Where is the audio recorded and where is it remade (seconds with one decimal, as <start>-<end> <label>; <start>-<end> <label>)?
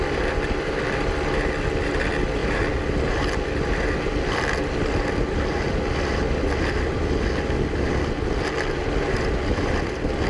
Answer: 0.0-10.3 recorded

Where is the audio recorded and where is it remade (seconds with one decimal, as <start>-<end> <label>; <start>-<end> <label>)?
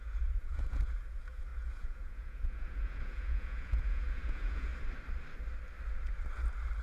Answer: 0.0-4.7 remade; 4.7-6.8 recorded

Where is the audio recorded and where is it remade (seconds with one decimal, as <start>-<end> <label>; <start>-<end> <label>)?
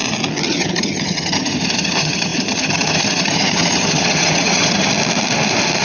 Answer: 0.0-0.5 recorded; 0.5-4.9 remade; 4.9-5.8 recorded